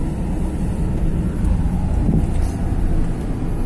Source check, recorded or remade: recorded